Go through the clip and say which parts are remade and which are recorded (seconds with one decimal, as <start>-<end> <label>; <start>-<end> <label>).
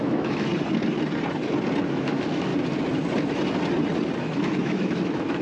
0.0-0.5 remade; 0.5-1.9 recorded; 1.9-2.5 remade; 2.5-4.2 recorded; 4.2-5.4 remade